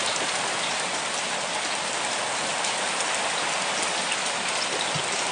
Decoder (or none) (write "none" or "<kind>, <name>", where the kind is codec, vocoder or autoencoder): none